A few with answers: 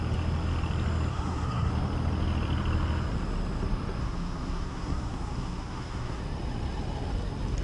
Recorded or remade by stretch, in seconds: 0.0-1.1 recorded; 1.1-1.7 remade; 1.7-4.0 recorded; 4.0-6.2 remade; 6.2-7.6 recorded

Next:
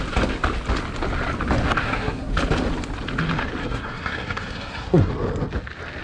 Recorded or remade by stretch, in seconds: 0.0-1.8 recorded; 1.8-2.3 remade; 2.3-3.6 recorded; 3.6-5.1 remade; 5.1-6.0 recorded